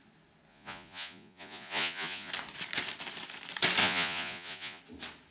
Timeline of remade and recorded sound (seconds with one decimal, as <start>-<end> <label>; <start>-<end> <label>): 0.0-0.5 recorded; 0.5-2.3 remade; 2.3-3.8 recorded; 3.8-4.8 remade; 4.8-5.3 recorded